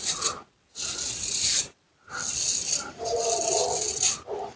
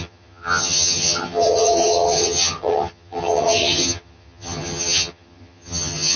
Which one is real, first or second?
first